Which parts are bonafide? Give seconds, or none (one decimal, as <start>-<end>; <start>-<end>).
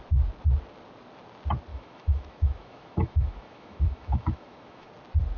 0.0-1.7; 4.9-5.4